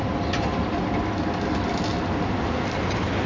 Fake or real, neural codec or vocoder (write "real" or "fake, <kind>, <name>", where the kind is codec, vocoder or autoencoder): real